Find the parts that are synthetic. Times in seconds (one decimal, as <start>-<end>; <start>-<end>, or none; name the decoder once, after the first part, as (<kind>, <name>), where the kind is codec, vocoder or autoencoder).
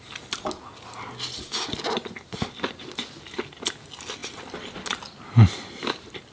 none